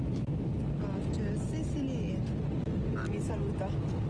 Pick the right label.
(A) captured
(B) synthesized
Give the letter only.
A